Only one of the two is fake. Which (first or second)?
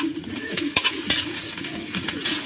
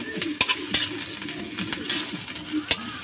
first